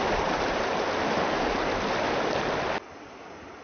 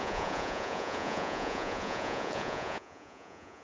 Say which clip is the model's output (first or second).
second